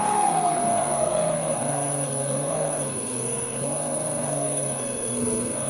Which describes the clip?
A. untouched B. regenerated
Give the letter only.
B